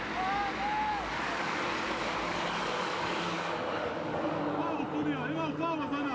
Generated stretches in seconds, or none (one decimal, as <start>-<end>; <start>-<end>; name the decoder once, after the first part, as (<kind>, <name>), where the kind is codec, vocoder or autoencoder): 0.9-4.6 (codec, DAC)